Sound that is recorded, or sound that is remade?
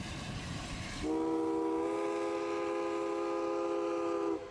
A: recorded